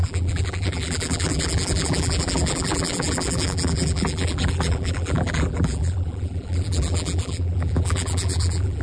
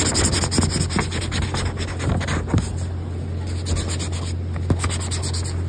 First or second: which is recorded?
second